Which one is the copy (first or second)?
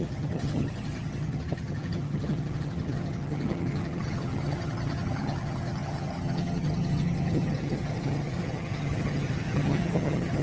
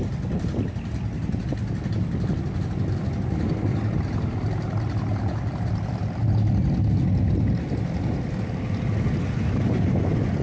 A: first